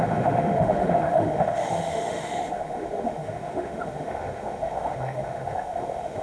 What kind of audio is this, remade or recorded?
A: remade